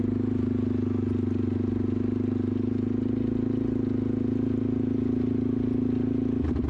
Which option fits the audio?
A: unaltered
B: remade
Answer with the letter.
A